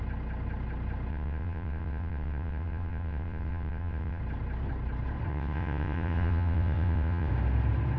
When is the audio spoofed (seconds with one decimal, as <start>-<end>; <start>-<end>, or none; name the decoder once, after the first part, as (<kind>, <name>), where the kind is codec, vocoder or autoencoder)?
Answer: 1.1-4.2 (vocoder, WaveNeXt); 5.3-7.3